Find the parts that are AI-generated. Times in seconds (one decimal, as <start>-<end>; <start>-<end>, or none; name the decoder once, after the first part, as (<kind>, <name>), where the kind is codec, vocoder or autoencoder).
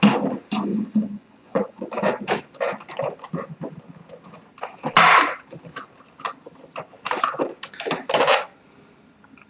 0.7-1.9 (vocoder, Vocos)